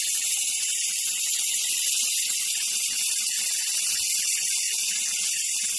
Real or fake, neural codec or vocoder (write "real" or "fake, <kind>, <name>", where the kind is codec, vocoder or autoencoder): real